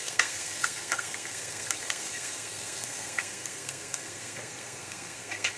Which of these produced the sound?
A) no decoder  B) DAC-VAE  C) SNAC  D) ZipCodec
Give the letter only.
C